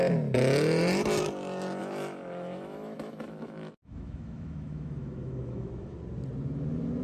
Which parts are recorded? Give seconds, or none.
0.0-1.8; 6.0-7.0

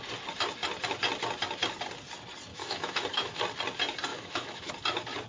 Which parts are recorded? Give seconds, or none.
0.0-2.5; 3.4-4.1; 4.7-5.3

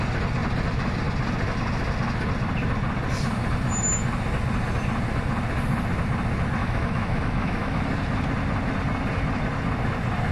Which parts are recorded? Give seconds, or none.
0.0-6.6; 7.8-10.3

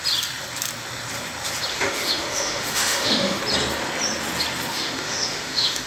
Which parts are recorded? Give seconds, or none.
0.0-1.7; 3.4-4.7

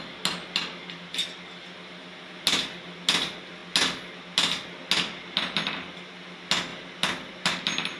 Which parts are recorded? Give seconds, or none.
0.0-8.0

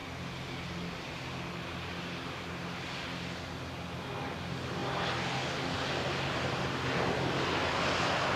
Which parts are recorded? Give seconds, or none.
0.0-8.4

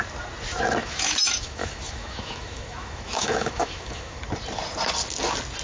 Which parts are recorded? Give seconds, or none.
0.0-0.8; 4.2-5.6